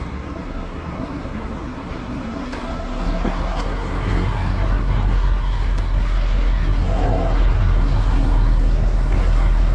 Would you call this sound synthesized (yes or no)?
yes